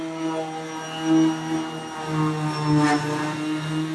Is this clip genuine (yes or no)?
yes